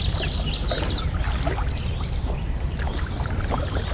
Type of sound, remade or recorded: recorded